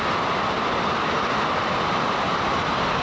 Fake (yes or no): no